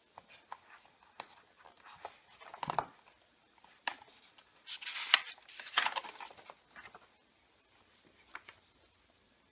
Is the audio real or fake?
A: real